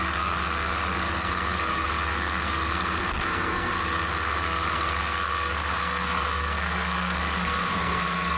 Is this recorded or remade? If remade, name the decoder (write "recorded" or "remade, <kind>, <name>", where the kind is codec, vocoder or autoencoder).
remade, codec, SNAC